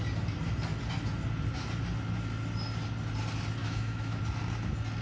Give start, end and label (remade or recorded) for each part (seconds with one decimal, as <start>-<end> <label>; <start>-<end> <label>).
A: 0.0-3.6 recorded; 3.6-4.2 remade; 4.2-5.0 recorded